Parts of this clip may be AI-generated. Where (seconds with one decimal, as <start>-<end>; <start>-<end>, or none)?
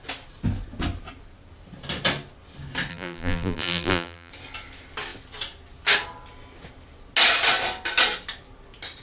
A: 2.9-4.3